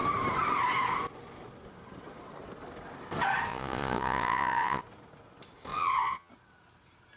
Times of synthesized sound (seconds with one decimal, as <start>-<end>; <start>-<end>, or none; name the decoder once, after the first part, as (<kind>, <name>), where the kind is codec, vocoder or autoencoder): 3.5-4.8 (vocoder, Vocos); 5.7-6.3